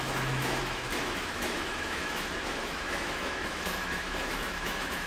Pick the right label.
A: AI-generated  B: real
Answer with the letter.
A